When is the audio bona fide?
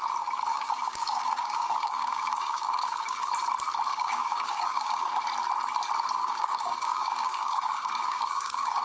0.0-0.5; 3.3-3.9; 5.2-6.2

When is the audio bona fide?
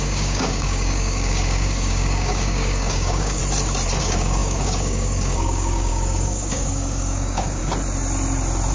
3.4-4.0; 7.6-8.7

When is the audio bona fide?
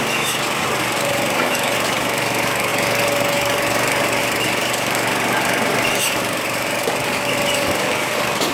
none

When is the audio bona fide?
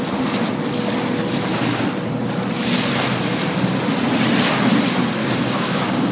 0.0-5.2